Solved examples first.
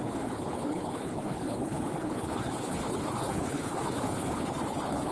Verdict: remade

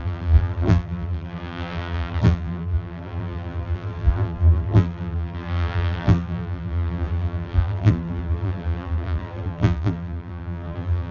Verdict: remade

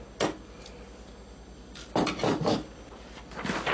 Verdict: recorded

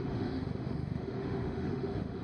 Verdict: remade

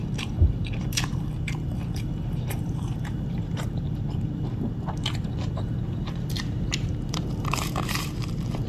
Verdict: remade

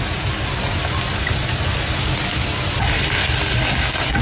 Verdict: recorded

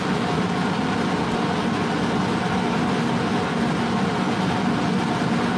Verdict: recorded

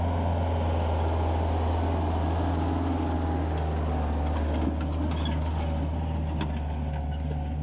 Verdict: recorded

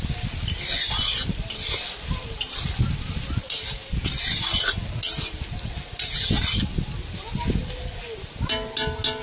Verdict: recorded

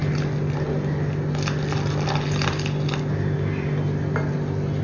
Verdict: recorded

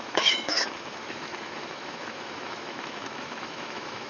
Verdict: remade